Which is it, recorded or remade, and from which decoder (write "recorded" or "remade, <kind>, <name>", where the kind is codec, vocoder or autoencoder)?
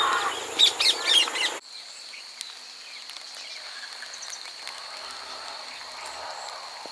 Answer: recorded